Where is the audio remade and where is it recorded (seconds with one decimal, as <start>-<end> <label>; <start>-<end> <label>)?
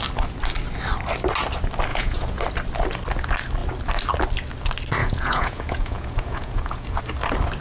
0.0-1.9 recorded; 1.9-2.4 remade; 2.4-5.0 recorded; 5.0-7.0 remade; 7.0-7.6 recorded